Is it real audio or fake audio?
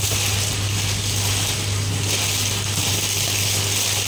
real